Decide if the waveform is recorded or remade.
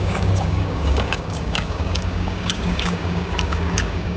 remade